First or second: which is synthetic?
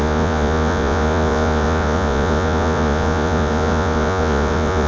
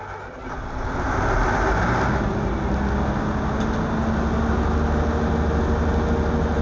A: first